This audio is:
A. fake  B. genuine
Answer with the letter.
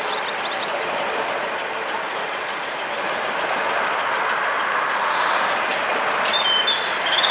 B